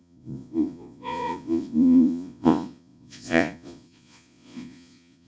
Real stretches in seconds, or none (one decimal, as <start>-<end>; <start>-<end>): none